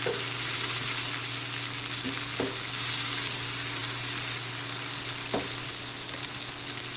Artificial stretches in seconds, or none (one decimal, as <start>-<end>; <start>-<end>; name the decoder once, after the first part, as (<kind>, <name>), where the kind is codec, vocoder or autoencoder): none